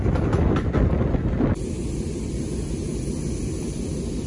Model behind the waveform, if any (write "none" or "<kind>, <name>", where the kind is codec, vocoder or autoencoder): none